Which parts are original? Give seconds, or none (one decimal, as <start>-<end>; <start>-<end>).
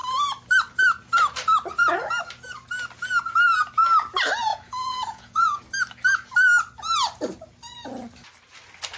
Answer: 0.0-4.5; 5.6-9.0